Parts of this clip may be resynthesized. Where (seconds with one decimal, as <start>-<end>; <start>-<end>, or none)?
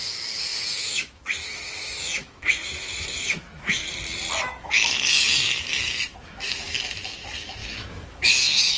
0.0-3.8; 4.4-8.8